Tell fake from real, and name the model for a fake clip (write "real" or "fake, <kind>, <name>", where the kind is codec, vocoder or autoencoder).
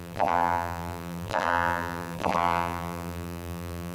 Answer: fake, vocoder, BigVGAN v2